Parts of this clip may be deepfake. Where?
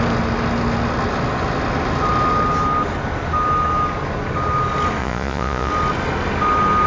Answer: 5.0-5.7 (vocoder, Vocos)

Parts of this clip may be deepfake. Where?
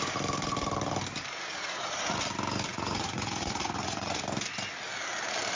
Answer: 1.5-2.2 (vocoder, Vocos); 2.7-4.2